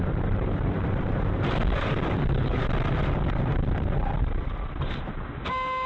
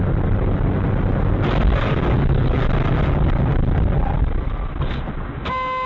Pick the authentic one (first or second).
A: second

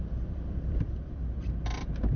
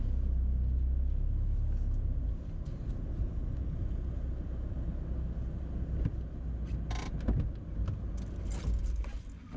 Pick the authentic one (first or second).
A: second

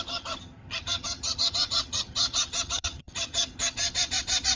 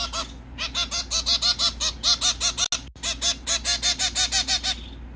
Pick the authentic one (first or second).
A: second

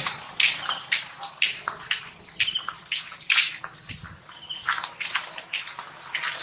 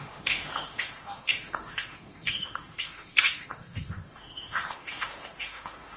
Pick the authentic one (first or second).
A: first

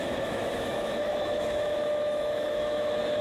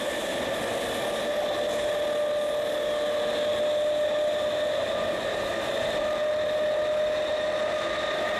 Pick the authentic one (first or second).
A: second